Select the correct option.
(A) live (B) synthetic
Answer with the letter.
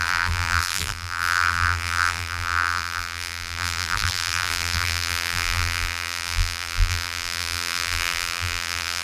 B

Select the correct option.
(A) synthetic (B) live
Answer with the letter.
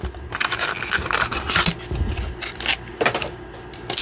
B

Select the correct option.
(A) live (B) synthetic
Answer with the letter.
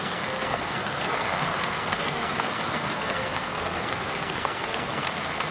B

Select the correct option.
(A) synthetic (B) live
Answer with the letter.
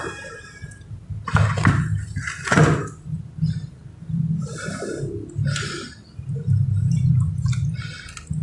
B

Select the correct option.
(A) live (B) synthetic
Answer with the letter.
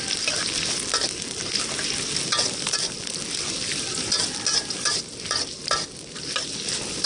A